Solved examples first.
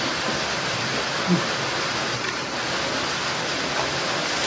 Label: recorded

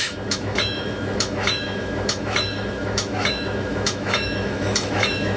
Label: remade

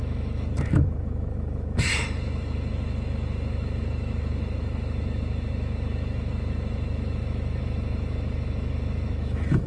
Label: remade